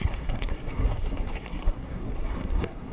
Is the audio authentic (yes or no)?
no